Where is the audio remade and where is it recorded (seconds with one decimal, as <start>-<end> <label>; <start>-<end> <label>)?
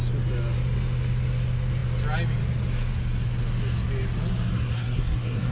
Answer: 0.0-4.5 recorded; 4.5-5.5 remade